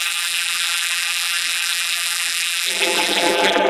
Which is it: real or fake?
fake